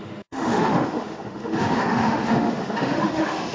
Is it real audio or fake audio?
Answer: fake